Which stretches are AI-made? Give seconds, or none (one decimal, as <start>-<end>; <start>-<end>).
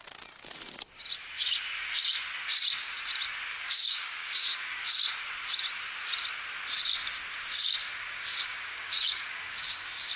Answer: 3.5-4.7; 7.8-10.2